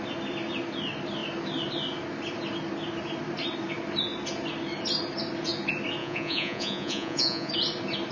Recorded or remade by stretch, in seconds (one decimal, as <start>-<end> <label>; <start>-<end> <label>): 0.0-6.0 recorded; 6.0-7.5 remade; 7.5-8.1 recorded